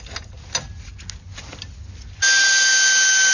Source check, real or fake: real